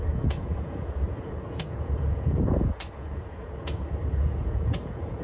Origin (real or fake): fake